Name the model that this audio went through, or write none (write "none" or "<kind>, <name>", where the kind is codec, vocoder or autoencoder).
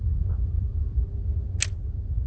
none